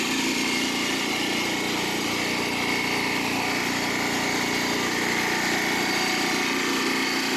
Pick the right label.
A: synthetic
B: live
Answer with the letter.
B